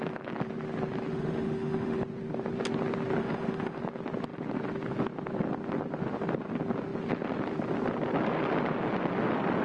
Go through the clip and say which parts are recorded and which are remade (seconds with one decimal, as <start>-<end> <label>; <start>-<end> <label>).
0.0-1.1 recorded; 1.1-2.0 remade; 2.0-3.2 recorded; 3.2-3.8 remade; 3.8-9.6 recorded

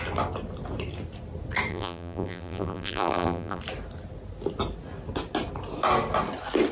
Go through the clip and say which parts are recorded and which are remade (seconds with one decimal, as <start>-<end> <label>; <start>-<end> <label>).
0.0-1.7 recorded; 1.7-3.6 remade; 3.6-6.7 recorded

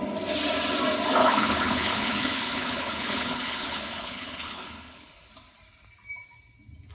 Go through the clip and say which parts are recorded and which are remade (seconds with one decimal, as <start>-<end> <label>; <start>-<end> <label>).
0.0-1.2 recorded; 1.2-5.3 remade; 5.3-6.9 recorded

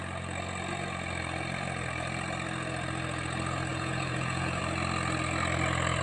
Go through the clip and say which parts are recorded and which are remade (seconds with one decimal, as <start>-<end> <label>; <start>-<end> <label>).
0.0-3.7 recorded; 3.7-4.6 remade; 4.6-6.0 recorded

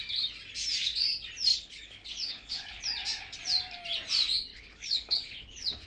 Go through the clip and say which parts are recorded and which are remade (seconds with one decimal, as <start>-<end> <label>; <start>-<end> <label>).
0.0-1.5 recorded; 1.5-2.8 remade; 2.8-4.5 recorded; 4.5-5.9 remade

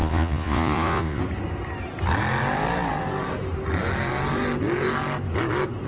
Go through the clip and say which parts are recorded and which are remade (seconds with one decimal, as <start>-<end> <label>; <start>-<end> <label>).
0.0-1.2 remade; 1.2-5.9 recorded